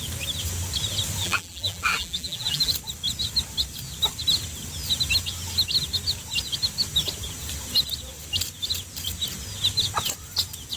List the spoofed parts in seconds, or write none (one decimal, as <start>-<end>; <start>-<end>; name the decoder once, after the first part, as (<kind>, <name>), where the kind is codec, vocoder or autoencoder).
1.2-2.7 (vocoder, BigVGAN v2)